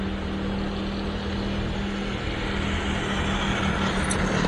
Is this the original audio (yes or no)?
yes